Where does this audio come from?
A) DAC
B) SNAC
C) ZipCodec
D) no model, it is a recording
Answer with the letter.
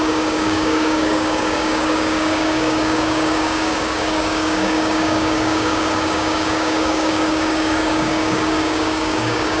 A